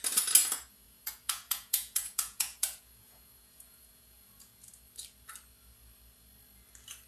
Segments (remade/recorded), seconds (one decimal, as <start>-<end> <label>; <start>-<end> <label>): 0.0-0.4 recorded; 0.4-4.7 remade; 4.7-7.1 recorded